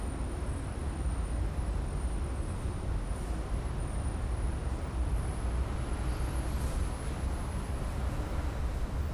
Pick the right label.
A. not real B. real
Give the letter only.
B